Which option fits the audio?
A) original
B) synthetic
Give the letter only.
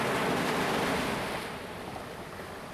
A